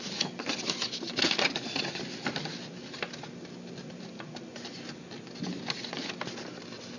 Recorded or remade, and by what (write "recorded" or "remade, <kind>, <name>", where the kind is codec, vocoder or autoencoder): recorded